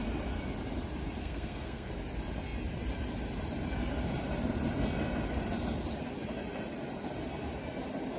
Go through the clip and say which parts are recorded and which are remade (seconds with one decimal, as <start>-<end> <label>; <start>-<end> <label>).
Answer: 0.0-1.2 recorded; 1.2-1.9 remade; 1.9-8.2 recorded